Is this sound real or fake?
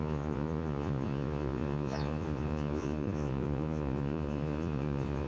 fake